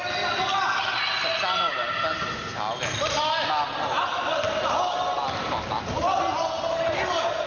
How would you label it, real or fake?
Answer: real